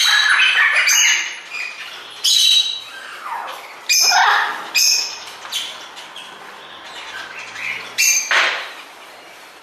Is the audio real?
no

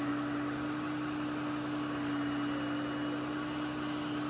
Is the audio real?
yes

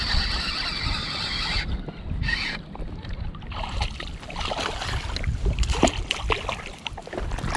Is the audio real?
yes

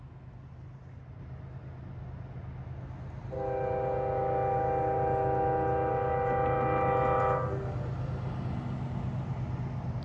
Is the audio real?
yes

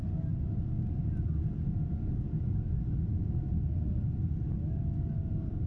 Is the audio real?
yes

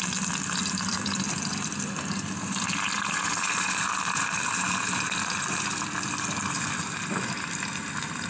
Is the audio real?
yes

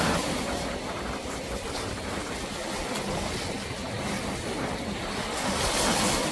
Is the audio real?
yes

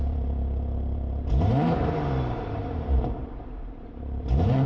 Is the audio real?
no